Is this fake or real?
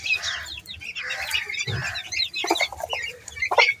real